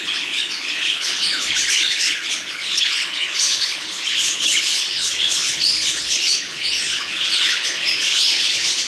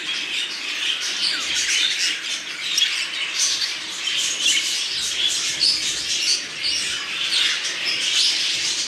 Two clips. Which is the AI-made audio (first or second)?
first